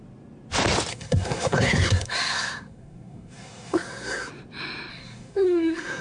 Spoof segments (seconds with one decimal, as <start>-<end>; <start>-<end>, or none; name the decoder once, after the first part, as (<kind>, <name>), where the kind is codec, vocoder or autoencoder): 0.9-4.3 (codec, SNAC); 4.9-6.0